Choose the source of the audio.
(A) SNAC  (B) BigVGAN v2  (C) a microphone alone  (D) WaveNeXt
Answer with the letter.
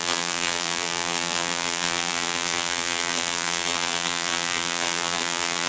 B